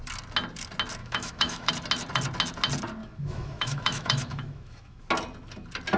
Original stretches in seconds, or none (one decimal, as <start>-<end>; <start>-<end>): 0.0-1.0; 1.7-3.0; 5.0-6.0